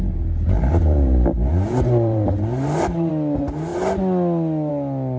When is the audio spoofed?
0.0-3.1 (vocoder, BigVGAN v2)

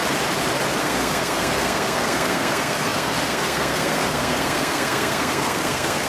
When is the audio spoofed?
0.8-6.1 (codec, SNAC)

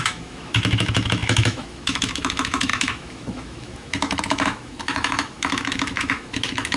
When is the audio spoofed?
0.0-6.8 (autoencoder, DAC-VAE)

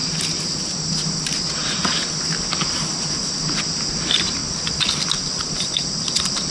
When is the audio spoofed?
0.0-4.4 (vocoder, BigVGAN v2); 5.4-6.5